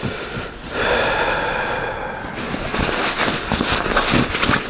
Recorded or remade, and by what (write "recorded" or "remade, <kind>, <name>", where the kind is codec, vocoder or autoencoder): recorded